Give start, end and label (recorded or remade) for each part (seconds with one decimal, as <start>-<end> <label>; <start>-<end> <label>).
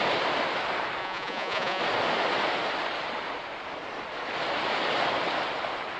0.0-1.0 recorded; 1.0-1.8 remade; 1.8-6.0 recorded